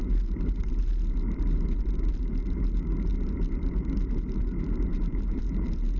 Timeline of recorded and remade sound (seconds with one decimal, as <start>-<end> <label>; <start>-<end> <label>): 0.0-3.1 remade; 3.1-4.4 recorded; 4.4-6.0 remade